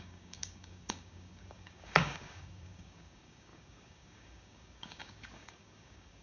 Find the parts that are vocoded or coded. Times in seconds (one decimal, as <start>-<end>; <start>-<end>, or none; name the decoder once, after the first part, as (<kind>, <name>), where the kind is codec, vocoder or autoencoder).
0.0-6.2 (codec, DAC)